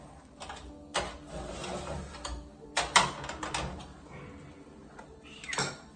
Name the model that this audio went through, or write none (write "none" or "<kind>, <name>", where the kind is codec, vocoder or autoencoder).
none